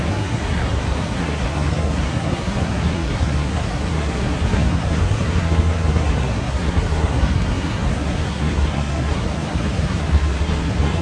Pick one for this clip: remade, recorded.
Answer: remade